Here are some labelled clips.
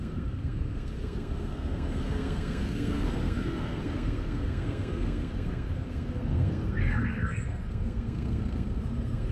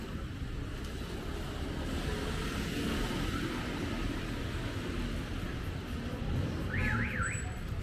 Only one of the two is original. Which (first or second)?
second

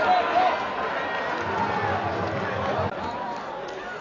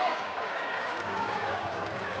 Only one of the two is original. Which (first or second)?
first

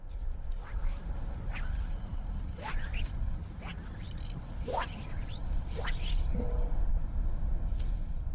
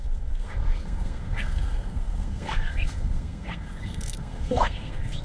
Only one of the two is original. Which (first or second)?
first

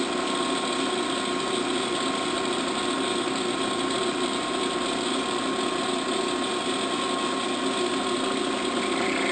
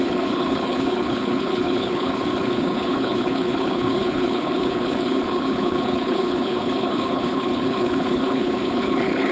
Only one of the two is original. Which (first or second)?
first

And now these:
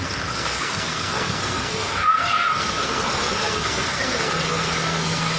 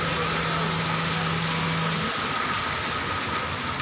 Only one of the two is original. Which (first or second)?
second